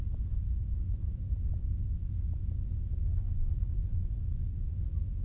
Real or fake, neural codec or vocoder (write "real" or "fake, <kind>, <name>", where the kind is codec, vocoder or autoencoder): real